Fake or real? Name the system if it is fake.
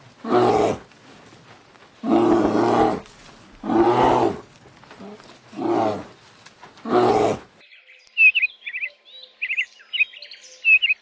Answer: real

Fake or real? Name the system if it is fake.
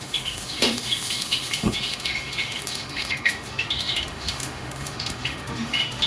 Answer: fake, autoencoder, DAC-VAE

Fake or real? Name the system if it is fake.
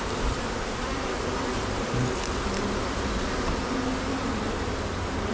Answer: real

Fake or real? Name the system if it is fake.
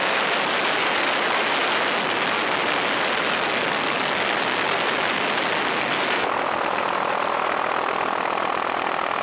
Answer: real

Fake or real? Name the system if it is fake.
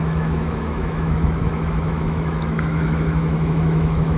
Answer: fake, autoencoder, DAC-VAE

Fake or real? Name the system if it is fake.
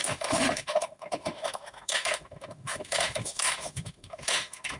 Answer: fake, autoencoder, DAC-VAE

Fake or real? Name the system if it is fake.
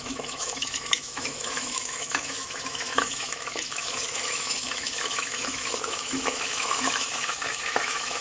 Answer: fake, autoencoder, DAC-VAE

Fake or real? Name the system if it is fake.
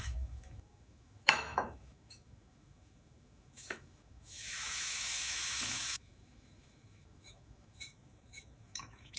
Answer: fake, autoencoder, DAC-VAE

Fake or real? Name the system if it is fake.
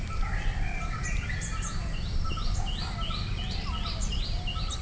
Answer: real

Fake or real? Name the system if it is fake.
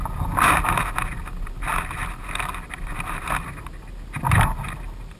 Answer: real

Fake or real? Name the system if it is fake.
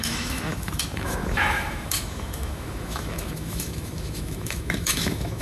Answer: fake, autoencoder, DAC-VAE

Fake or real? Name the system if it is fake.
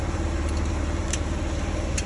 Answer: real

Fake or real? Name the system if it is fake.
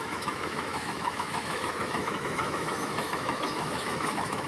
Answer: fake, autoencoder, DAC-VAE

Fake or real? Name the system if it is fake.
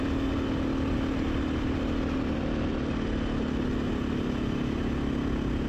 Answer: real